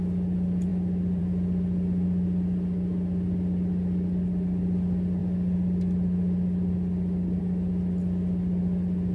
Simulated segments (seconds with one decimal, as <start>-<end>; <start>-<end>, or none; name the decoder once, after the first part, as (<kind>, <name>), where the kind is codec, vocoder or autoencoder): none